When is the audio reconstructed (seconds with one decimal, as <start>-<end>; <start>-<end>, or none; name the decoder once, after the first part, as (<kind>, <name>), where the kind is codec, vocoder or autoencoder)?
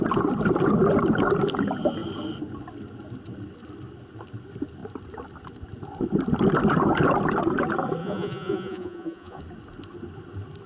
8.0-9.4 (vocoder, Vocos)